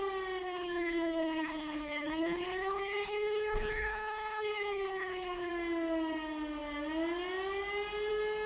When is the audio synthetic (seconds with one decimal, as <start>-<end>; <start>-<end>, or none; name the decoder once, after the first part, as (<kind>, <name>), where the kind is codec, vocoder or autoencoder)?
0.4-5.5 (codec, HILCodec)